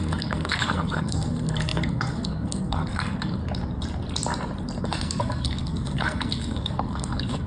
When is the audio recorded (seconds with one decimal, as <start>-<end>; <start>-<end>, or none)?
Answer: 3.4-4.8